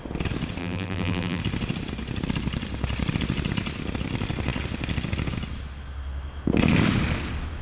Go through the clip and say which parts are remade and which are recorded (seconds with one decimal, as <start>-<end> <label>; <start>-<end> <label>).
0.0-0.6 recorded; 0.6-1.4 remade; 1.4-7.6 recorded